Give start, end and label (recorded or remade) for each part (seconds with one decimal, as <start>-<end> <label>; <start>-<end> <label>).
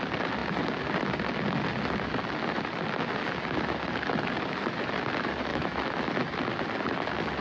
0.0-5.5 recorded; 5.5-6.1 remade; 6.1-7.4 recorded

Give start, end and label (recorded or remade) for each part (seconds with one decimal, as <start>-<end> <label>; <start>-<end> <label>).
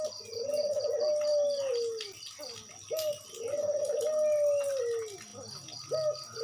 0.0-6.4 recorded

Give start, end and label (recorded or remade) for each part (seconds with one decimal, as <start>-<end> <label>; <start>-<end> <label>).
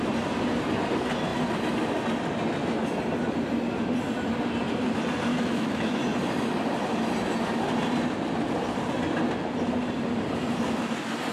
0.0-5.3 recorded; 5.3-6.0 remade; 6.0-11.3 recorded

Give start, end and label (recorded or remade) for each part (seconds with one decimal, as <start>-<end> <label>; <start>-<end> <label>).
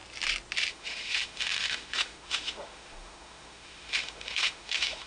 0.0-0.7 recorded; 0.7-5.1 remade